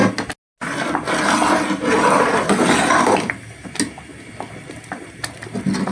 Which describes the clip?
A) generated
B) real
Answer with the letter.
B